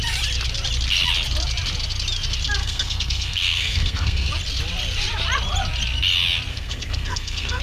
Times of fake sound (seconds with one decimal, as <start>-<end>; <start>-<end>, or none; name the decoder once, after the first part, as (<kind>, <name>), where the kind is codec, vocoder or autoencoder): 2.6-4.3 (codec, SNAC); 6.5-7.6